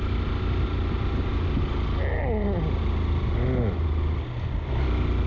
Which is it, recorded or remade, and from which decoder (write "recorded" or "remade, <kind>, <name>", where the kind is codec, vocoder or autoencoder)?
recorded